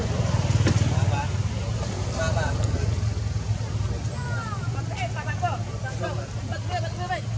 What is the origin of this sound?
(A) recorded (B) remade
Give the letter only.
A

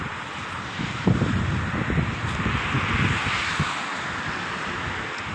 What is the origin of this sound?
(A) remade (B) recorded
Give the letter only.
B